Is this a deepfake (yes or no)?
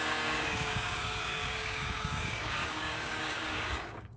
yes